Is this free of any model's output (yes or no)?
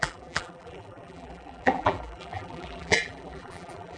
no